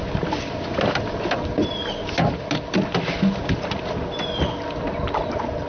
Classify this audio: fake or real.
real